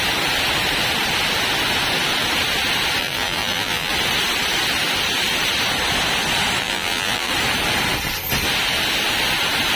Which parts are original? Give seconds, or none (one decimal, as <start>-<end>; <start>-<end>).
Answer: 0.0-3.0; 3.9-6.6; 7.3-9.8